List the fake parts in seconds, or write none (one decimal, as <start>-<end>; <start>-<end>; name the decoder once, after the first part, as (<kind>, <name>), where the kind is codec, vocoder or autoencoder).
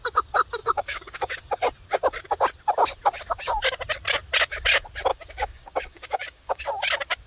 0.6-1.5 (codec, DAC); 5.1-6.6